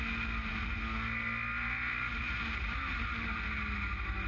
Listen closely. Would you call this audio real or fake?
real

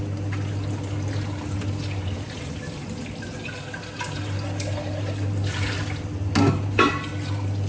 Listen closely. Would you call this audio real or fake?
real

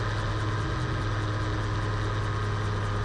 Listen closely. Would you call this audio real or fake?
real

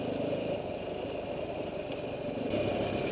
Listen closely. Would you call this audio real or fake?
real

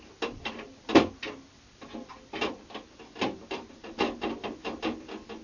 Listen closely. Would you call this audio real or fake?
real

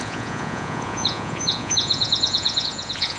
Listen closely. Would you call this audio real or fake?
fake